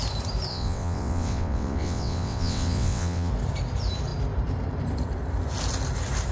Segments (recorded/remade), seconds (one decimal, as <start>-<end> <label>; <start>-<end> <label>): 0.0-0.5 recorded; 0.5-3.3 remade; 3.3-6.3 recorded